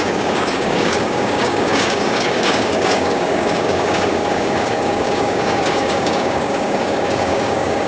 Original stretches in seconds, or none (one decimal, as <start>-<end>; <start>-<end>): none